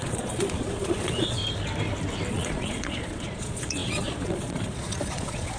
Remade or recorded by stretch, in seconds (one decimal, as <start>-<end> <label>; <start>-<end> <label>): 0.0-1.4 remade; 1.4-2.3 recorded; 2.3-5.6 remade